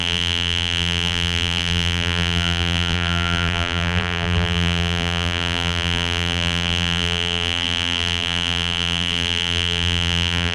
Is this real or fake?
fake